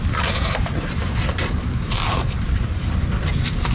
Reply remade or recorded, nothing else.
recorded